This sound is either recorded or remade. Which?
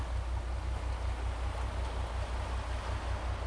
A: recorded